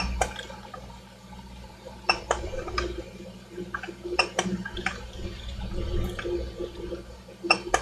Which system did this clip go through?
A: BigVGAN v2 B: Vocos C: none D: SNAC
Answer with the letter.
A